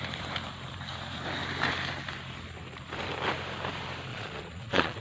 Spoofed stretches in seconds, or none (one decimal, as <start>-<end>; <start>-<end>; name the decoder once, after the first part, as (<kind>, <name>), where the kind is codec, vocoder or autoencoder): 4.1-5.0 (vocoder, Vocos)